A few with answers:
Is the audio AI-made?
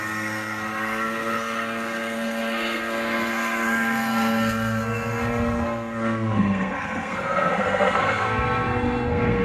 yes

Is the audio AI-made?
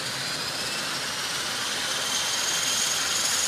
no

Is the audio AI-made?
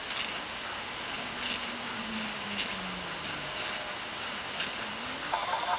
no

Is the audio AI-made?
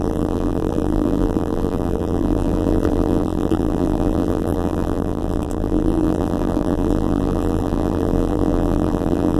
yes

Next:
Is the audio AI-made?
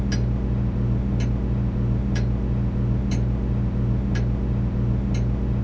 no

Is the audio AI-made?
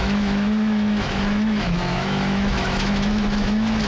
yes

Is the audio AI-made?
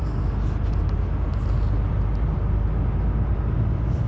no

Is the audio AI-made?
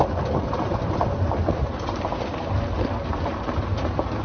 no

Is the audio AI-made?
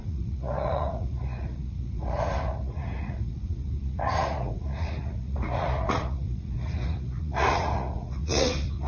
yes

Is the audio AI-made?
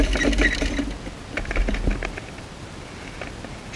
no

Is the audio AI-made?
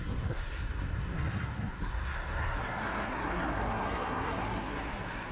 yes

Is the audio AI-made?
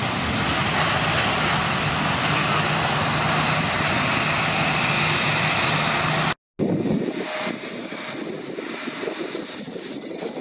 no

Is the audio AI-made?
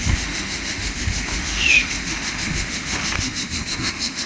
yes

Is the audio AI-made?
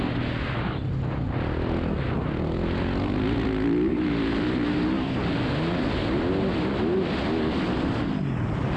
no